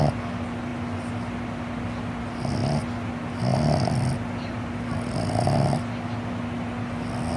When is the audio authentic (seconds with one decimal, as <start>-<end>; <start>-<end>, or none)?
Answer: 0.0-7.4